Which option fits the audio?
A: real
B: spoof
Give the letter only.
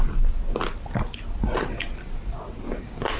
A